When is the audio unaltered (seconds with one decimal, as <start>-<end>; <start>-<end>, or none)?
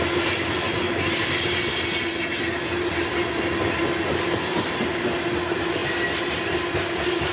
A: 0.0-7.3